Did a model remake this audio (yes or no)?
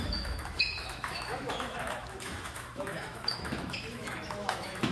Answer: yes